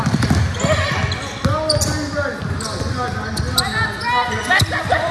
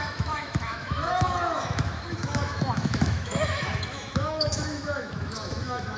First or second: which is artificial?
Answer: second